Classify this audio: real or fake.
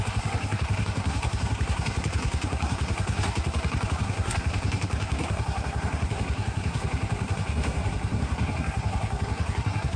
fake